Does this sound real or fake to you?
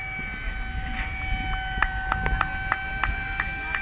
real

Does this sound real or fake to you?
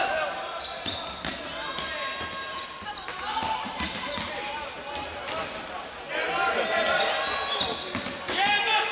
real